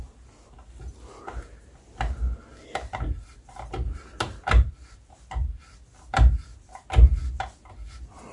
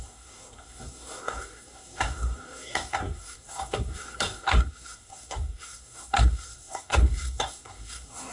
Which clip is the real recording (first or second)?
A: first